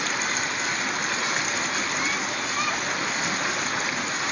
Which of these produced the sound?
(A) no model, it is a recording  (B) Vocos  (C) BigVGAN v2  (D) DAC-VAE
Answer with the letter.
A